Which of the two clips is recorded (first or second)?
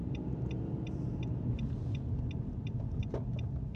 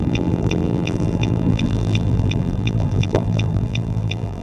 first